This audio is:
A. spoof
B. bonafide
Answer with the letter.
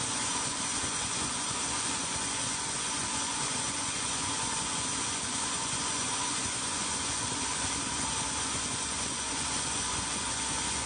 A